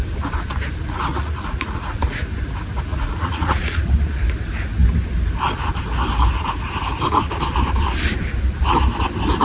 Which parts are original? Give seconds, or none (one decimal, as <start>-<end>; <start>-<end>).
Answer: 0.0-1.1; 2.2-2.9; 3.9-9.4